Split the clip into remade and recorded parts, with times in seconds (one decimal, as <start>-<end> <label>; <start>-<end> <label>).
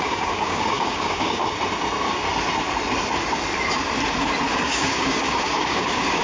0.0-1.4 remade; 1.4-4.6 recorded; 4.6-6.2 remade